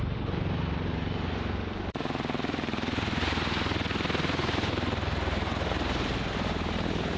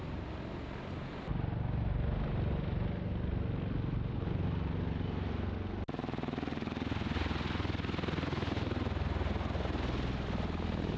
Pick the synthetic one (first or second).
first